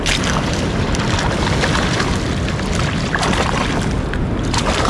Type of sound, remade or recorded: recorded